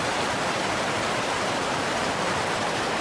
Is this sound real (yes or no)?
no